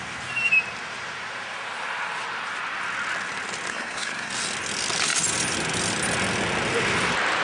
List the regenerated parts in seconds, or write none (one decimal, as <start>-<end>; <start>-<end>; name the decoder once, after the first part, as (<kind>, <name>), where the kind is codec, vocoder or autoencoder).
3.7-4.3 (codec, SNAC)